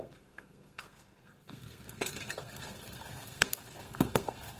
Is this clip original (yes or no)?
no